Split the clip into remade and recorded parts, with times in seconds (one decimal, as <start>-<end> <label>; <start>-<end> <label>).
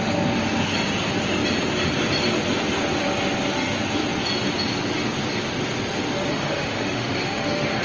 0.0-6.3 recorded; 6.3-7.8 remade